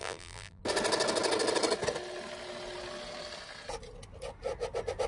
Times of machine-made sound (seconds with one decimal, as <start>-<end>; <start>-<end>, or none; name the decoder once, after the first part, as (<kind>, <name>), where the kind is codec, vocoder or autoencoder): 0.0-0.6 (vocoder, BigVGAN v2)